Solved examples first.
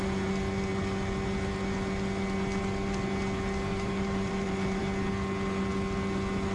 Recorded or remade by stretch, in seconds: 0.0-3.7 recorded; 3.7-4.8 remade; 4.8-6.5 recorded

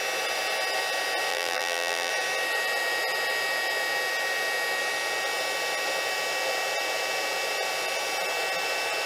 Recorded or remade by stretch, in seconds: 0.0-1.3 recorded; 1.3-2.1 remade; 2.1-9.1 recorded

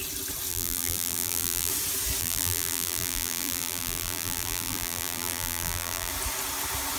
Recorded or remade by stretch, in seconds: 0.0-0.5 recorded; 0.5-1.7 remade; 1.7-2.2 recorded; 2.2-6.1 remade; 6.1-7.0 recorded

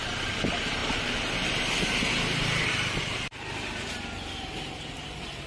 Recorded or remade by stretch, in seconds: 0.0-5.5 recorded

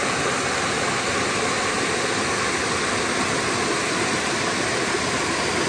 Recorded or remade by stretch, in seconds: 0.0-5.7 recorded

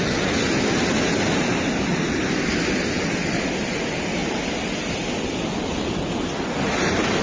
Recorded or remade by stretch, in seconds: 0.0-7.2 recorded